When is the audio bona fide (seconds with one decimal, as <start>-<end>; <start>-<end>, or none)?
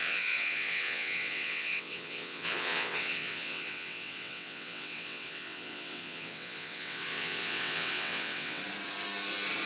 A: 8.6-9.7